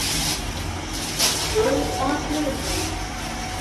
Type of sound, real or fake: real